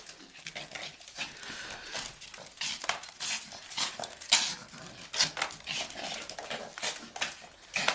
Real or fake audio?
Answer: real